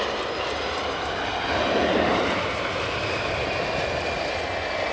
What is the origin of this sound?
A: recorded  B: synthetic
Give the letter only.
A